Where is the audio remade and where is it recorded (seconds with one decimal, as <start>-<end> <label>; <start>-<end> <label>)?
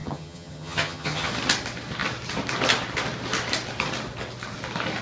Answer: 0.0-1.3 remade; 1.3-5.0 recorded